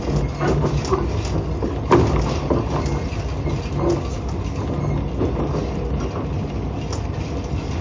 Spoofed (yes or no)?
no